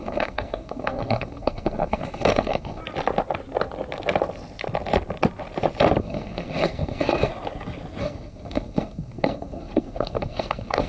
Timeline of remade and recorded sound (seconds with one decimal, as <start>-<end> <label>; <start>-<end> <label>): 0.0-2.8 remade; 2.8-6.0 recorded; 6.0-7.3 remade; 7.3-8.0 recorded; 8.0-10.9 remade